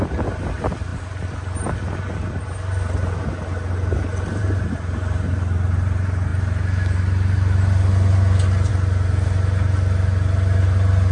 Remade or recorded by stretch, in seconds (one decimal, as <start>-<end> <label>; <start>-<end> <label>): 0.0-11.1 recorded